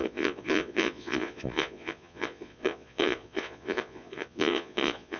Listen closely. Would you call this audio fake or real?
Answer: fake